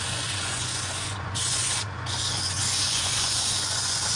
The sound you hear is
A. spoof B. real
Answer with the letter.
A